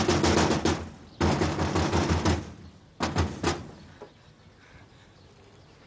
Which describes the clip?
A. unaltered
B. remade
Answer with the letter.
A